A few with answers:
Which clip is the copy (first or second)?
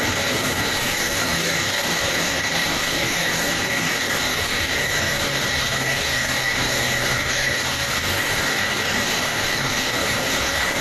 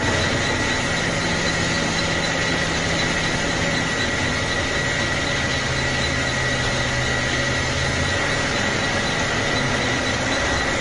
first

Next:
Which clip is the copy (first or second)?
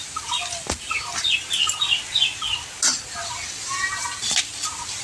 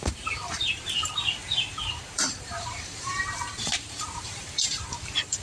second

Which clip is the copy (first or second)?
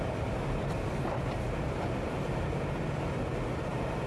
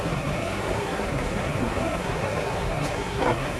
second